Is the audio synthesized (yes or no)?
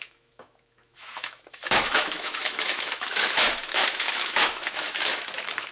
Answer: yes